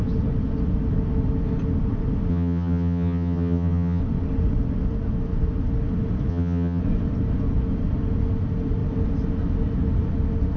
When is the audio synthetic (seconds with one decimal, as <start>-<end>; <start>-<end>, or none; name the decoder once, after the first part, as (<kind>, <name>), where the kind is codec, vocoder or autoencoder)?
2.3-4.0 (vocoder, HiFi-GAN); 6.3-6.8